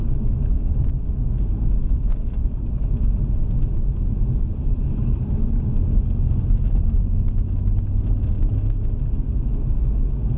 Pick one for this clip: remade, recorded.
recorded